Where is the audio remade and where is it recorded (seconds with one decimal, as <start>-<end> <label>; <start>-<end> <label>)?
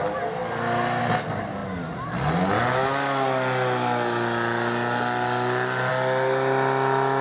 0.0-7.2 recorded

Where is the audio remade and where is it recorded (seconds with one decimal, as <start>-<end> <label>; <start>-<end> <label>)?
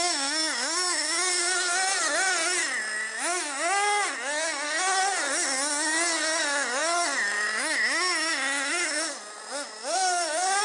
0.0-10.6 recorded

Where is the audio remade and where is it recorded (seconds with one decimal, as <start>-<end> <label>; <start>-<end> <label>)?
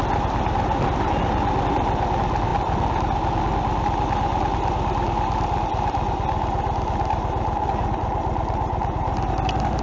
0.0-9.8 recorded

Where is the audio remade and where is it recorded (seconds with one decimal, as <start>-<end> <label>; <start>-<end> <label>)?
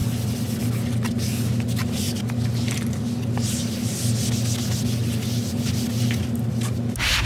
0.0-7.3 recorded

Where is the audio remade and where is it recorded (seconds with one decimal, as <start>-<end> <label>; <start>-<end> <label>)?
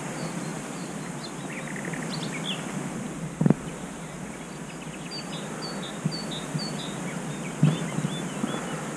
0.0-9.0 recorded